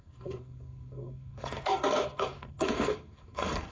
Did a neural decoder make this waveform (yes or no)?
yes